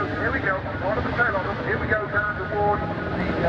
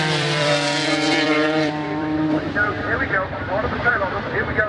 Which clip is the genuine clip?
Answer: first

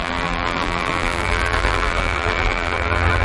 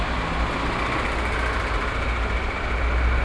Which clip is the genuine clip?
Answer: second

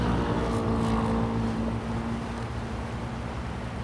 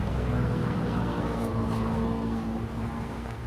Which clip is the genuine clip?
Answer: first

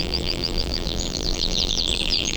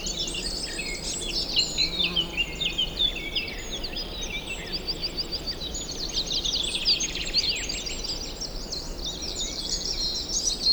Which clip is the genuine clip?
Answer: second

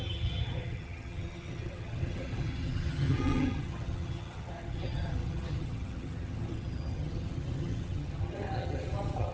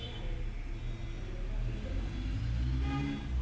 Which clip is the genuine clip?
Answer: second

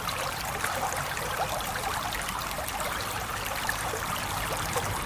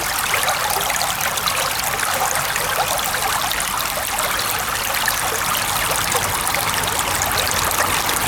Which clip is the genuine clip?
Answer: second